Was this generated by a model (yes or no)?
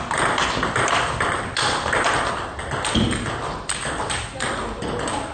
no